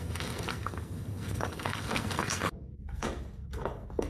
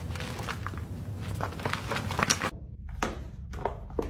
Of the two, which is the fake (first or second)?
first